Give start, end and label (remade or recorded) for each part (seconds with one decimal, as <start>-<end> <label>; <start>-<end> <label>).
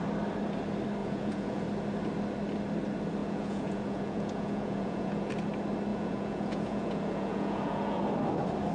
0.0-1.0 recorded; 1.0-1.6 remade; 1.6-3.2 recorded; 3.2-5.3 remade; 5.3-5.9 recorded; 5.9-8.0 remade; 8.0-8.7 recorded